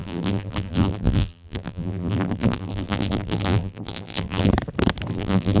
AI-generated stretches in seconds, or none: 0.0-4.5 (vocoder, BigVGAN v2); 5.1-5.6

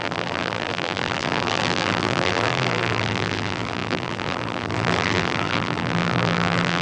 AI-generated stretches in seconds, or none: 0.0-6.8 (vocoder, BigVGAN v2)

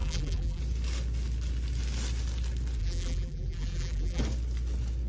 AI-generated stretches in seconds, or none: 0.0-0.6 (vocoder, BigVGAN v2); 2.8-4.2

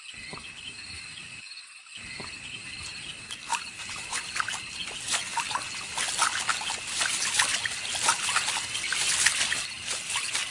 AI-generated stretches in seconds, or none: 3.5-4.2 (vocoder, BigVGAN v2)

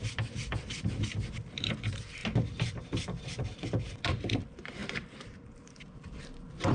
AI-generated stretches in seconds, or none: 0.0-2.2 (vocoder, BigVGAN v2); 3.2-6.7

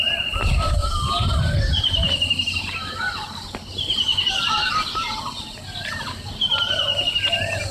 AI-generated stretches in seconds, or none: 0.8-3.0 (vocoder, BigVGAN v2); 4.1-4.7

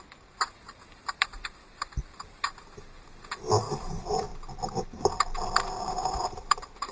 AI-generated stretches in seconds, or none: 0.0-2.5 (vocoder, BigVGAN v2); 3.7-4.3; 5.9-6.9

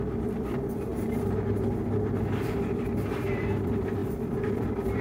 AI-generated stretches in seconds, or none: 0.0-0.9 (vocoder, BigVGAN v2); 2.7-4.0; 4.5-5.0